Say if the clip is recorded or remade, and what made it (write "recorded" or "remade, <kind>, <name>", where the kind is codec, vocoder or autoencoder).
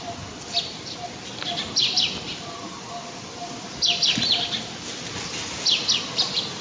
recorded